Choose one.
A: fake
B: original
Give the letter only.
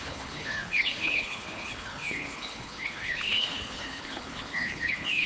A